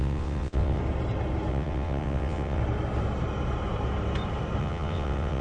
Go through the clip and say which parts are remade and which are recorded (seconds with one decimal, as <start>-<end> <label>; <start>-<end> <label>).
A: 0.0-0.8 remade; 0.8-1.5 recorded; 1.5-2.6 remade; 2.6-4.6 recorded; 4.6-5.4 remade